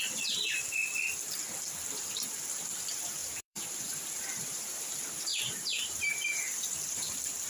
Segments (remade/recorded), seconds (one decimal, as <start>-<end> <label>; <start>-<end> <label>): 0.0-0.8 remade; 0.8-1.8 recorded; 1.8-7.5 remade